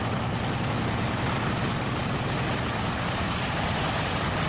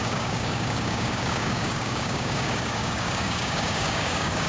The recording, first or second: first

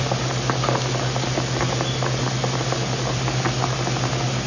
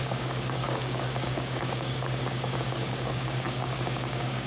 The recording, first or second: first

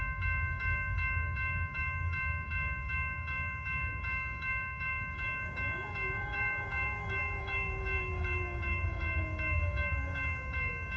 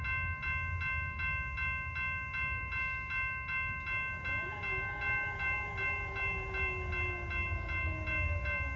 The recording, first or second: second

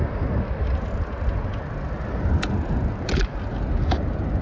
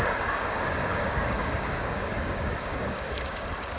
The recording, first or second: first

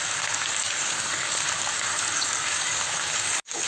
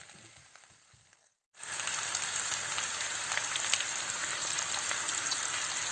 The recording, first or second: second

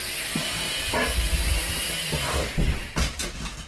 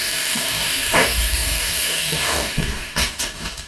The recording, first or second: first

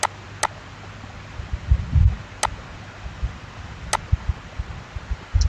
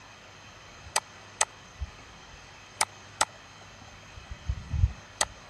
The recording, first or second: first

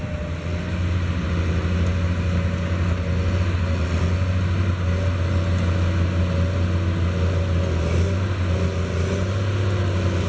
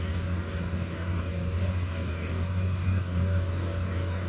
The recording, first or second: first